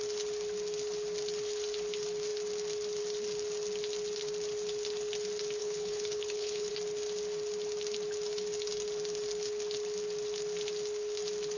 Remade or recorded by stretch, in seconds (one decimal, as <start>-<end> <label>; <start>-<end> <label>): 0.0-5.6 recorded; 5.6-6.7 remade; 6.7-11.6 recorded